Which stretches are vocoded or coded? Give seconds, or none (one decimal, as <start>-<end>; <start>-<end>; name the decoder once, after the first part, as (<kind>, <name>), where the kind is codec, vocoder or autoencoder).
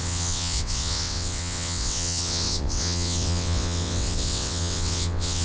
0.0-5.4 (vocoder, WaveNeXt)